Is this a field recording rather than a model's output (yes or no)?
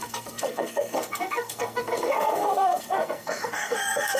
no